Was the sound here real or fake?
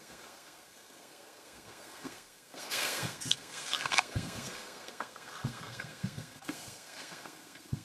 fake